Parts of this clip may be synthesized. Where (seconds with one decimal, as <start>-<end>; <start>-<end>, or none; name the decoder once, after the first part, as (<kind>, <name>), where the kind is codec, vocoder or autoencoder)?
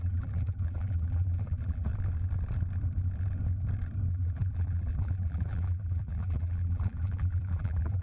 0.0-1.9 (vocoder, BigVGAN v2); 4.1-8.0